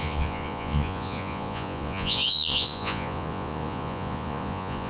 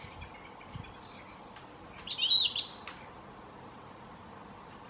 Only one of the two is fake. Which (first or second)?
first